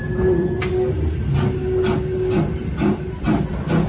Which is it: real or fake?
real